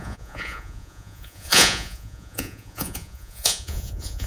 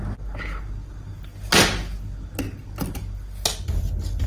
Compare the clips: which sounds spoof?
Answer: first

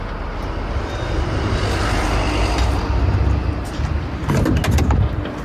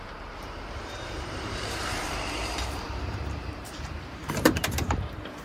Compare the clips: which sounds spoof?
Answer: second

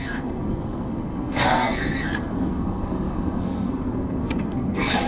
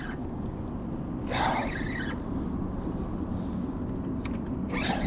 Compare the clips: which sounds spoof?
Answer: first